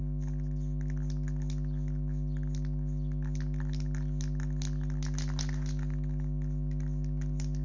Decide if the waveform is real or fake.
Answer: real